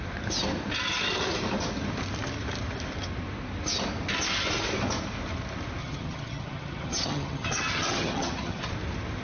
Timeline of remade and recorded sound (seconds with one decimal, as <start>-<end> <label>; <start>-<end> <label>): 0.0-5.8 recorded; 5.8-8.7 remade; 8.7-9.2 recorded